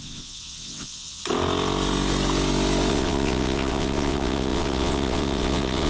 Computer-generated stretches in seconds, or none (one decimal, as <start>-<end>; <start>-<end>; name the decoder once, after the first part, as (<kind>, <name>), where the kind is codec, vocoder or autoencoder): 0.0-1.2 (vocoder, WaveNeXt); 2.9-5.9